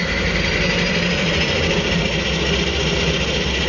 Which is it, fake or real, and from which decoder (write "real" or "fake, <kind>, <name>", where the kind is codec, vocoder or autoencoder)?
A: real